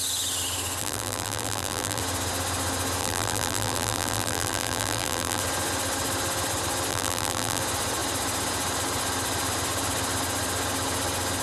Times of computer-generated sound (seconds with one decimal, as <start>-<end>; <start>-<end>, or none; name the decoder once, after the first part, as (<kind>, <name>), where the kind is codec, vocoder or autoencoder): 0.8-2.0 (vocoder, BigVGAN v2); 3.0-5.4; 6.9-7.6